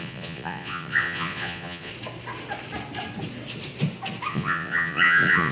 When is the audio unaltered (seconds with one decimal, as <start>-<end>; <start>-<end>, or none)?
1.9-4.3